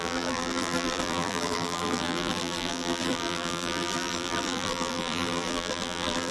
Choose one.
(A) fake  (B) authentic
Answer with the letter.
A